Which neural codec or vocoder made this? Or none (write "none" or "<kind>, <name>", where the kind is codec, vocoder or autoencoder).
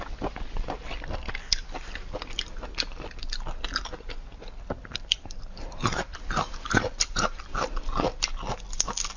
none